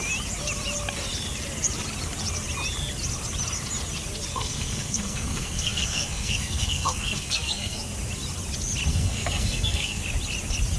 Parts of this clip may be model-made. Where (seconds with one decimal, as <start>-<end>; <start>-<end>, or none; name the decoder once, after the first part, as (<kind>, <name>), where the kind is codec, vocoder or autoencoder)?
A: 4.3-7.8 (codec, SNAC); 8.9-10.0